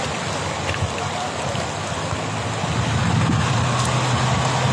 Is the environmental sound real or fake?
real